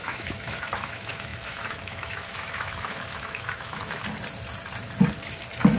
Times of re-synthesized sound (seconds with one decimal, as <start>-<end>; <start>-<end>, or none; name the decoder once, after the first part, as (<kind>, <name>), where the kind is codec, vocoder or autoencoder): 0.0-4.0 (autoencoder, DAC-VAE)